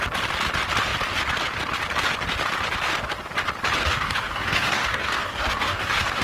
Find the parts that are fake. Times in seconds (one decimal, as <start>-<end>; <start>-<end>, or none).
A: 3.8-6.2